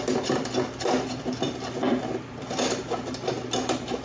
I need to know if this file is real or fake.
real